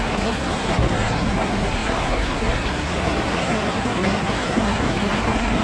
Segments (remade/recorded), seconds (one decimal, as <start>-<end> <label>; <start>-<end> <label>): 0.0-5.6 remade